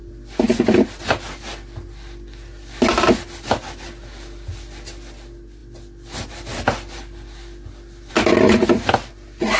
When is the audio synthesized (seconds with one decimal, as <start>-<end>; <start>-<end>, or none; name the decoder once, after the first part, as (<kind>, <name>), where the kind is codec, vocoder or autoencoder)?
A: none